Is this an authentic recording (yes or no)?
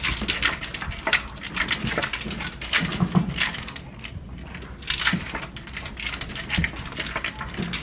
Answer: yes